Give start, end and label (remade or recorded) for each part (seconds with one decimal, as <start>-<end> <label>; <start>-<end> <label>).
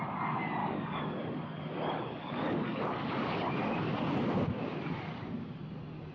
0.0-0.6 recorded; 0.6-3.5 remade; 3.5-6.1 recorded